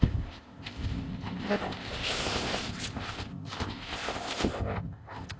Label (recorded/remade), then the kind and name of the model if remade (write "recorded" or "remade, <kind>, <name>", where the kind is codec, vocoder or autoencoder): remade, codec, ZipCodec